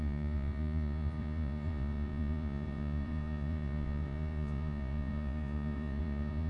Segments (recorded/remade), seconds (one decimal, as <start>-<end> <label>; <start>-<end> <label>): 0.0-6.5 remade